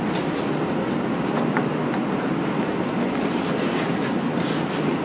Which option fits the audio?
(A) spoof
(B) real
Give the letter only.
B